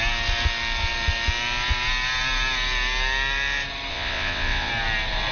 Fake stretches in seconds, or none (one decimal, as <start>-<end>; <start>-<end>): 3.9-4.7